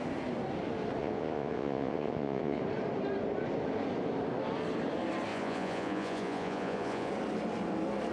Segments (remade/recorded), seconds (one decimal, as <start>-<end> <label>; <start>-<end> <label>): 0.0-1.0 recorded; 1.0-2.6 remade; 2.6-5.3 recorded; 5.3-7.1 remade; 7.1-8.1 recorded